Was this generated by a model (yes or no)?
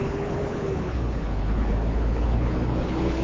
yes